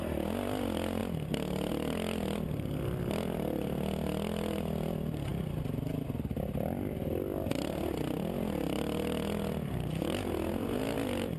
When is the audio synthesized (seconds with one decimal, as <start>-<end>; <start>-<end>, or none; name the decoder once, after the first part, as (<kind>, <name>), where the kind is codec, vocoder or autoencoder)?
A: none

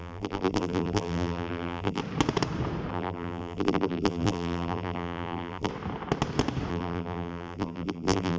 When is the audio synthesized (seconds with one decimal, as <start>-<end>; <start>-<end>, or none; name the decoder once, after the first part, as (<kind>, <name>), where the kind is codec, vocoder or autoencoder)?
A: 0.0-2.0 (vocoder, BigVGAN v2); 2.9-5.7; 6.7-8.4

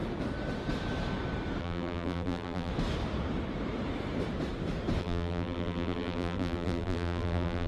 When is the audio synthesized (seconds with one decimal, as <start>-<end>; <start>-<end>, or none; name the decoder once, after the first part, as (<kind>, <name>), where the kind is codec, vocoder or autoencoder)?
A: 1.6-2.7 (vocoder, BigVGAN v2); 5.0-7.7

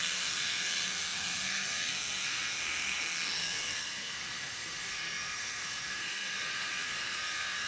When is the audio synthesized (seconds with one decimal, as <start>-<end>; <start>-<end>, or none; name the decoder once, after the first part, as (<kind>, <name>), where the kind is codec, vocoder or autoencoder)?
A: 0.0-7.7 (codec, SNAC)

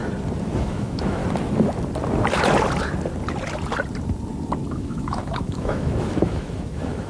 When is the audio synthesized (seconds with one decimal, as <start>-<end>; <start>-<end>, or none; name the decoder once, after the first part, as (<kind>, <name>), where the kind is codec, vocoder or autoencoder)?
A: 0.6-1.2 (autoencoder, DAC-VAE); 4.7-7.1

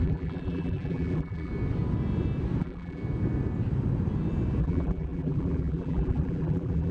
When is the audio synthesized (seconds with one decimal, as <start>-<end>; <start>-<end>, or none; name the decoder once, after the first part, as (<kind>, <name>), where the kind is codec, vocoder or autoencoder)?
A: 0.0-1.5 (vocoder, BigVGAN v2); 2.6-3.0; 4.6-6.9